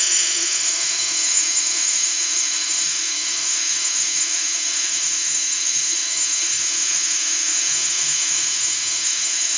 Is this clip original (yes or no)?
no